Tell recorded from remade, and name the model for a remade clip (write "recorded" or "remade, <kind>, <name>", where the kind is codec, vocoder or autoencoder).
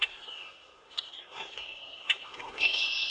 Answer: remade, codec, SNAC